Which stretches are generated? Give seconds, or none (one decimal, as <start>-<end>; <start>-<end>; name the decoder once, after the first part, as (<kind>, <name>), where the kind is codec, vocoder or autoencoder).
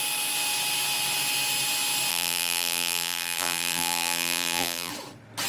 2.1-4.9 (vocoder, BigVGAN v2)